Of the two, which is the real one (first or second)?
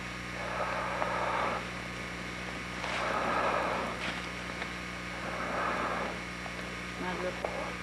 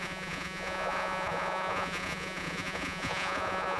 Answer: first